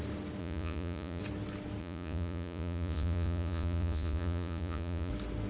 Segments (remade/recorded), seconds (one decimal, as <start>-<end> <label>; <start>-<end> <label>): 0.0-0.4 recorded; 0.4-1.2 remade; 1.2-1.8 recorded; 1.8-5.1 remade; 5.1-5.5 recorded